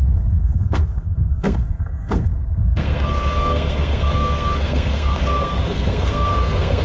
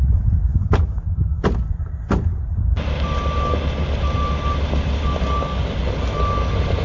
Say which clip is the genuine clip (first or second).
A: second